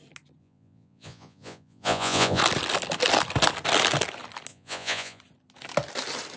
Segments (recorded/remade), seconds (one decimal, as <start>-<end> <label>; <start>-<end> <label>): 0.0-0.4 recorded; 0.4-2.4 remade; 2.4-4.5 recorded; 4.5-5.2 remade; 5.2-6.4 recorded